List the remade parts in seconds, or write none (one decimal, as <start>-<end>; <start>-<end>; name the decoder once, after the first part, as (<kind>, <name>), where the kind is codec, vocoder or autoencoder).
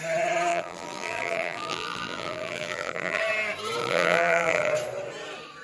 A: 0.5-3.2 (vocoder, BigVGAN v2); 3.8-4.7